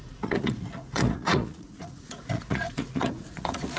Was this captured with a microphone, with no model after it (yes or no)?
no